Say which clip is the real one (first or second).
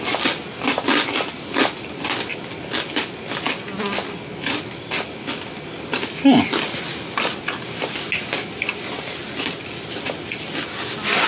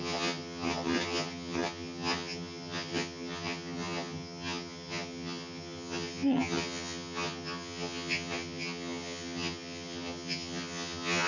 first